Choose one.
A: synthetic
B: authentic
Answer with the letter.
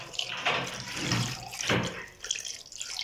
A